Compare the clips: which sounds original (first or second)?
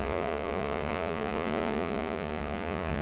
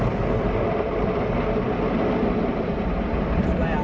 second